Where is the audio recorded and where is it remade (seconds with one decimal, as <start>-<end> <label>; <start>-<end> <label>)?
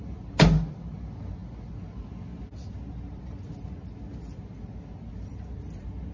0.0-6.1 recorded